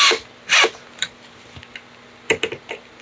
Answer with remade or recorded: recorded